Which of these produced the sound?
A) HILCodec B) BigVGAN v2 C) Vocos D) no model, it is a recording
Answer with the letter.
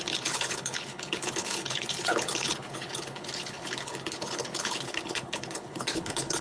A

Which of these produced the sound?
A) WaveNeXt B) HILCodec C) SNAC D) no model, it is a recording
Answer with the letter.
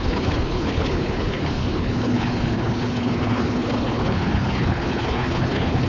B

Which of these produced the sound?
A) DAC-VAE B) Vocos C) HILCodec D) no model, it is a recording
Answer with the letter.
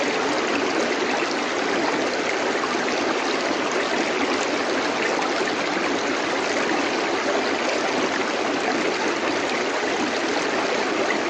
D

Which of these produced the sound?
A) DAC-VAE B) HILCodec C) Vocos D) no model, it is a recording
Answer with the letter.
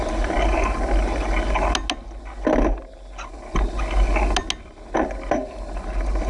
D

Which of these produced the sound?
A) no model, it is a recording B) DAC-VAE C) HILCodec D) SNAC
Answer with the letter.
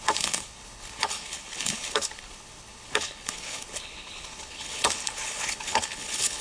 C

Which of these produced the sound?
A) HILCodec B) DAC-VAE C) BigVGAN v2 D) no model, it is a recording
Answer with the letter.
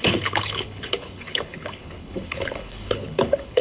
A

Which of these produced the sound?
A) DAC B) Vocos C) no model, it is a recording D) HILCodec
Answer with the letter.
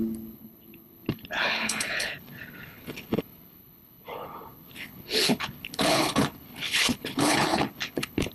D